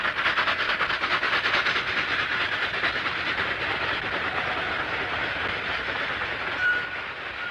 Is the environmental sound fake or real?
real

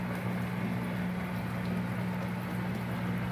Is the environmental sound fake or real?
real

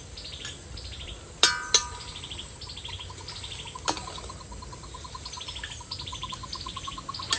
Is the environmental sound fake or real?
real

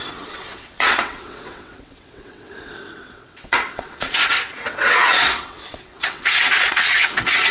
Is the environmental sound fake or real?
fake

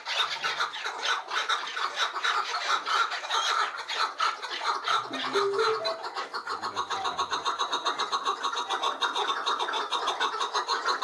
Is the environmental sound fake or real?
real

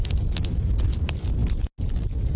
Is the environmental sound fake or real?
real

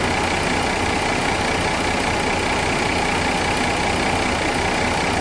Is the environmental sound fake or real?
real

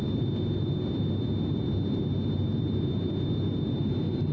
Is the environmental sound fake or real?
real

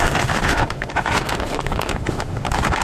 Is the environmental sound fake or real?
fake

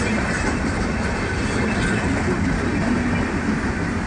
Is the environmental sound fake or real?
real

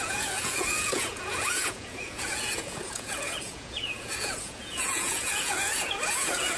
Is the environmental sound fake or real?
fake